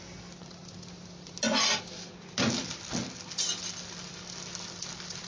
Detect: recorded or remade recorded